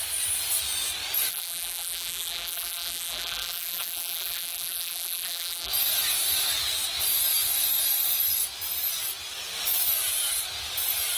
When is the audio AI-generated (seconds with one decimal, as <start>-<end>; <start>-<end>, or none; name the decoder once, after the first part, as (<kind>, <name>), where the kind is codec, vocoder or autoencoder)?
1.3-5.7 (vocoder, BigVGAN v2)